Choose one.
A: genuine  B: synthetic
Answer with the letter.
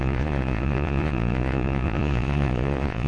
B